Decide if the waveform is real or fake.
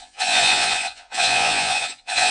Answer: fake